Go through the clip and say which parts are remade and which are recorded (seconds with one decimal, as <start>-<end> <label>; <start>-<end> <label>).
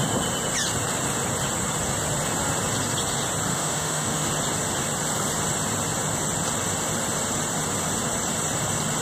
0.0-3.5 recorded; 3.5-4.3 remade; 4.3-9.0 recorded